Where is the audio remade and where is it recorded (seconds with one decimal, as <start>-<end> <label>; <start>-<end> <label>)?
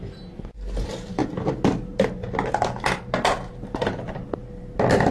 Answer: 0.0-5.1 recorded